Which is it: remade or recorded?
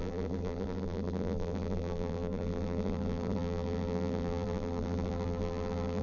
remade